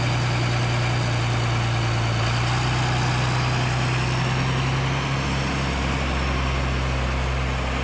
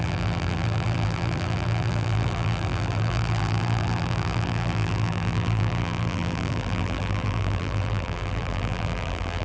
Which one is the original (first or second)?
first